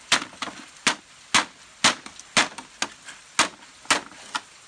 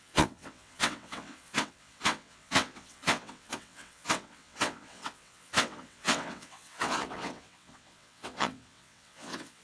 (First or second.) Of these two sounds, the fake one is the second